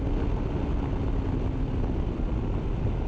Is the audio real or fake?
real